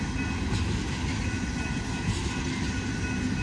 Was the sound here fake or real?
real